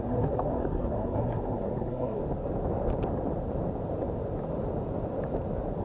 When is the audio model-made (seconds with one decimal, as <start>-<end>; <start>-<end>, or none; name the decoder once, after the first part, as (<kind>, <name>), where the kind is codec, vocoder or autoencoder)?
0.0-2.2 (codec, SNAC)